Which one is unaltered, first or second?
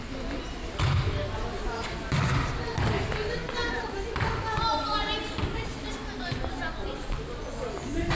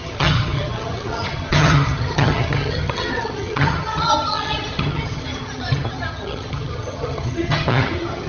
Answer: first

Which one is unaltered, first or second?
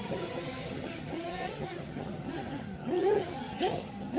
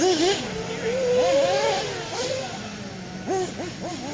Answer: second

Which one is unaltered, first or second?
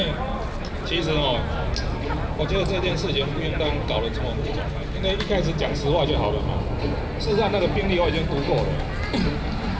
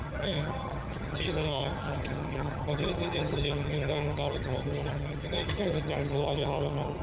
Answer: first